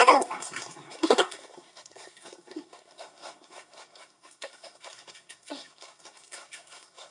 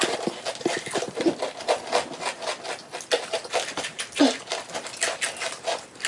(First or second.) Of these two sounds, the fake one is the first